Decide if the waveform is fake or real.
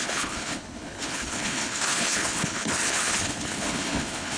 fake